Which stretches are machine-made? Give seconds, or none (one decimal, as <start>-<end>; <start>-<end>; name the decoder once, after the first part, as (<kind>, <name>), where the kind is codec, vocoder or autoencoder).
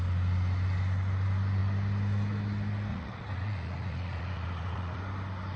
2.9-5.0 (vocoder, Vocos)